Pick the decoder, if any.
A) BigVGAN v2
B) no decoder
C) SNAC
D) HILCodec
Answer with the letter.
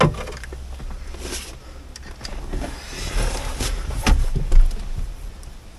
B